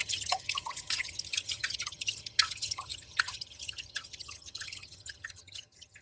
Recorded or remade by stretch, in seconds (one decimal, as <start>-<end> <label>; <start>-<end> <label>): 0.0-6.0 remade